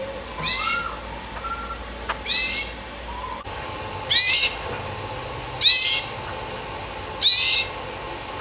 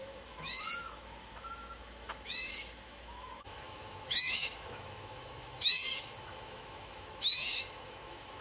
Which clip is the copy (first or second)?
second